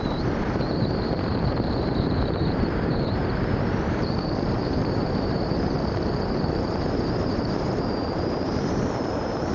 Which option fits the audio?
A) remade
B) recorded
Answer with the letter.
A